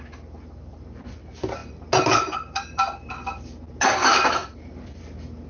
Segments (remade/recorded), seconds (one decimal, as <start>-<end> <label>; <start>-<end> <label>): 0.0-4.4 recorded; 4.4-5.0 remade; 5.0-5.5 recorded